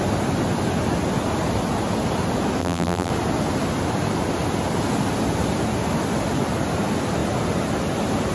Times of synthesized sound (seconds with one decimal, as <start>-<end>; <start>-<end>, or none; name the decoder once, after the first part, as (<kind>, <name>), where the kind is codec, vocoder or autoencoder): 2.6-3.1 (vocoder, BigVGAN v2)